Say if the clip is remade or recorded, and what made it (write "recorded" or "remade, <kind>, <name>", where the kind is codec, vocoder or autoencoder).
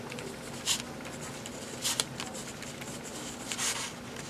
recorded